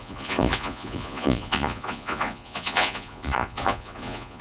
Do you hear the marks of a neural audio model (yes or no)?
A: yes